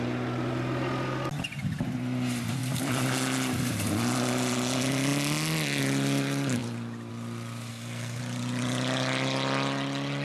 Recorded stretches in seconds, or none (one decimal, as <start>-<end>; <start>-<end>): 0.0-7.7; 8.2-10.2